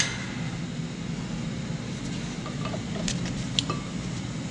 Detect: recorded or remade recorded